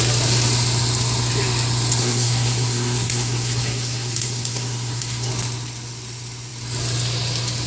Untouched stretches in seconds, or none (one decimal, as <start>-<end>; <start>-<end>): 0.0-2.0; 5.3-7.7